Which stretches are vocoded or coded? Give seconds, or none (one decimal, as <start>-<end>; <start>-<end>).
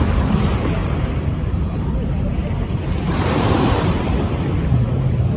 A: 0.8-1.5; 2.4-4.2